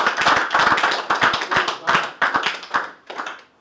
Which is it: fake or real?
real